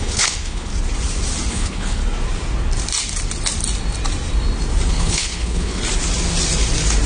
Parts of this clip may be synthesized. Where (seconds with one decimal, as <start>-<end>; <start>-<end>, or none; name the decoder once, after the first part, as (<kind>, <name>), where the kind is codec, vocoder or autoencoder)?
0.0-0.7 (codec, HILCodec); 1.5-2.0; 4.9-5.8